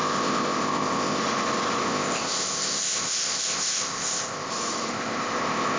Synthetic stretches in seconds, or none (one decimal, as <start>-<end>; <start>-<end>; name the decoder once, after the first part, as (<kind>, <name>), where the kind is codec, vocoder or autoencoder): 0.0-1.2 (codec, ZipCodec); 1.8-4.5; 4.9-5.8